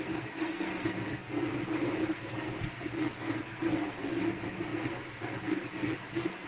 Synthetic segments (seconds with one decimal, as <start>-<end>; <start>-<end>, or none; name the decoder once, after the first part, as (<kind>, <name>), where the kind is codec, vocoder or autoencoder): 0.0-6.5 (codec, SNAC)